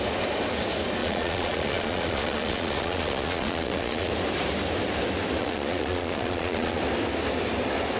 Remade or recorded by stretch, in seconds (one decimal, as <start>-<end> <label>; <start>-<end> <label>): 0.0-1.0 recorded; 1.0-4.1 remade; 4.1-5.4 recorded; 5.4-6.8 remade; 6.8-8.0 recorded